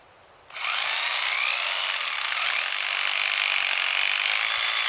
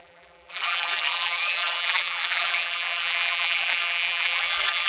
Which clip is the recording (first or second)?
first